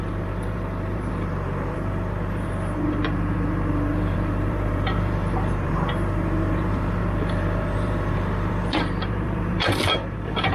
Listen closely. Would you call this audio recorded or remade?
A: remade